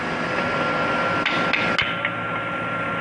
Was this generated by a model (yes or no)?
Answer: no